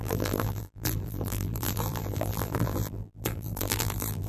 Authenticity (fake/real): fake